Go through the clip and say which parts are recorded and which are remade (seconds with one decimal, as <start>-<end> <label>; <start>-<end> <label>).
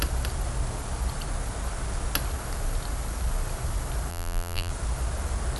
0.0-4.1 recorded; 4.1-4.7 remade; 4.7-5.6 recorded